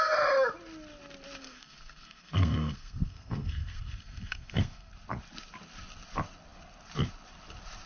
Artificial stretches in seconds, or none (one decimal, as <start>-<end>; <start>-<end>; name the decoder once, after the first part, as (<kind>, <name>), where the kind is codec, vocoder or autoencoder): 1.4-4.9 (codec, SNAC)